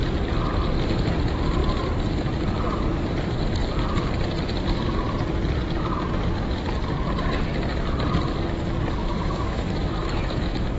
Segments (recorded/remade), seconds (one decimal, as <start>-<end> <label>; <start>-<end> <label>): 0.0-9.0 recorded; 9.0-10.8 remade